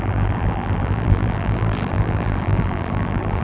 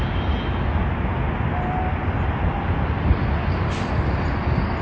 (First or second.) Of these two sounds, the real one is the second